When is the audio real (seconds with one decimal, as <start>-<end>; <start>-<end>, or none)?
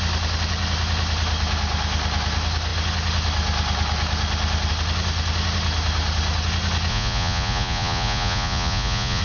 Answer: 0.0-6.9